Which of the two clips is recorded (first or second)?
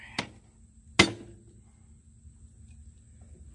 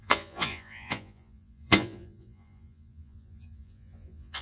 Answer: first